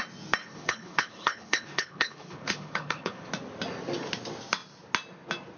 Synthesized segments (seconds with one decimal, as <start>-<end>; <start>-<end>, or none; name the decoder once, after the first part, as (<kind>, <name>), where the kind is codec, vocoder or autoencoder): 0.4-3.3 (codec, HILCodec)